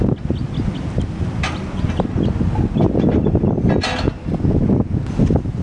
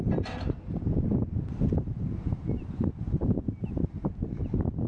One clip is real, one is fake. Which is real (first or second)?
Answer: first